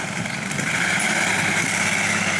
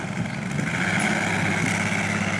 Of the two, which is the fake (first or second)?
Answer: first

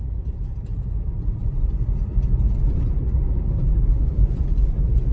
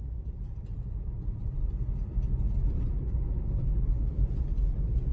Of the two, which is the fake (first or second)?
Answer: first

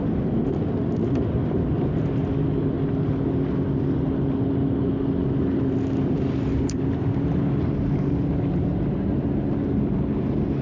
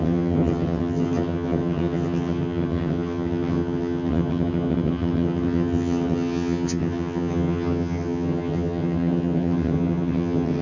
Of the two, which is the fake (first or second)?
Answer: second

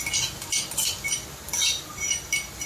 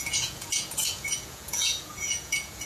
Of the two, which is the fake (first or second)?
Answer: second